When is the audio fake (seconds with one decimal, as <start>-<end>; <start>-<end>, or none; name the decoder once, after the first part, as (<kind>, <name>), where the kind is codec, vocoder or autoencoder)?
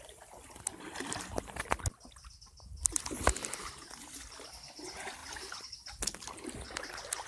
none